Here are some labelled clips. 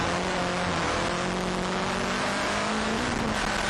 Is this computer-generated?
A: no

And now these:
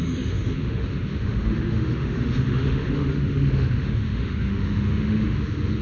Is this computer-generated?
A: yes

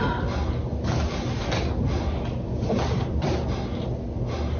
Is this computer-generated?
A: no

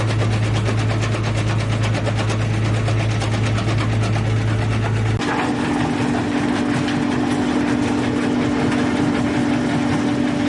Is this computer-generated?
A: no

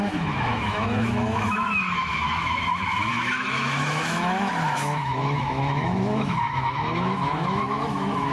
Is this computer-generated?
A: yes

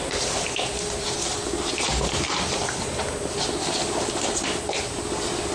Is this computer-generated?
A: no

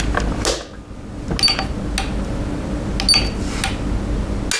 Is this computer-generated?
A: no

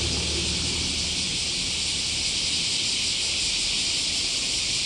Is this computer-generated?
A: no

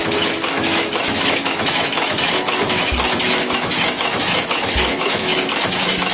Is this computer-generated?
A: yes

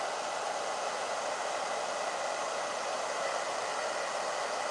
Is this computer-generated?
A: no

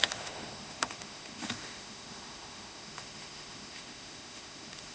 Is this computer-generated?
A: yes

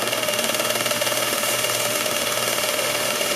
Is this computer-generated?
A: yes